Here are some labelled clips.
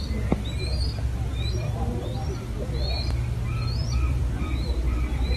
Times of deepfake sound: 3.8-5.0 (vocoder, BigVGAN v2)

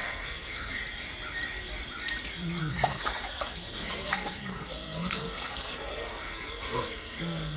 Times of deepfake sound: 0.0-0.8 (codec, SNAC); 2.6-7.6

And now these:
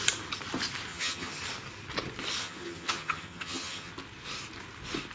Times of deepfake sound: 0.9-1.4 (vocoder, HiFi-GAN); 2.4-3.9

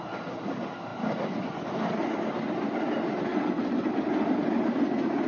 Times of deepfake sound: 3.3-4.0 (vocoder, WaveNeXt)

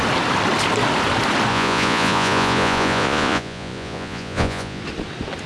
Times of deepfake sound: 1.5-4.8 (vocoder, Vocos)

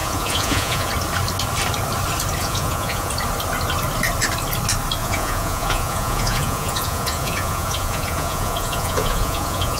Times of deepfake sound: 0.0-0.9 (vocoder, Vocos); 2.4-3.1; 5.0-9.8

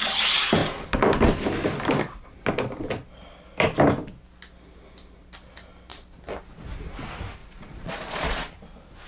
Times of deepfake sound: 7.4-8.5 (vocoder, Vocos)